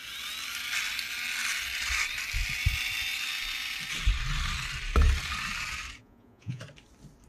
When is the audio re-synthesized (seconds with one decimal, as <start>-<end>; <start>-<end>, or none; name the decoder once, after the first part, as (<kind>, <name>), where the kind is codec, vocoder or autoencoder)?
6.0-6.6 (vocoder, Vocos)